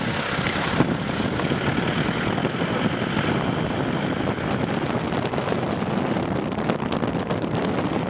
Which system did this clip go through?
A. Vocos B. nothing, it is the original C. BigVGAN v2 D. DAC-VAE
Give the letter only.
C